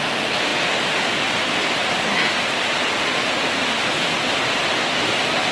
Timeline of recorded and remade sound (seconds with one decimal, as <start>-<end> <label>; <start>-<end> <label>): 0.0-5.5 recorded